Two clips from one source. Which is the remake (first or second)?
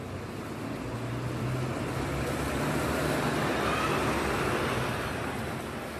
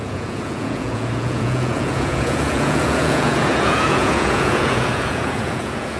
second